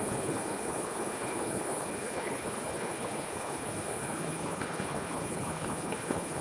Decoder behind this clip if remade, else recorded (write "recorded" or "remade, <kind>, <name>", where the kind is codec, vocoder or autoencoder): remade, codec, HILCodec